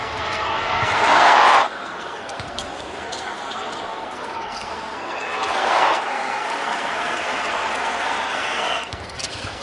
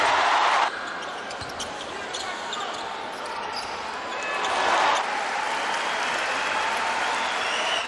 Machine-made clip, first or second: first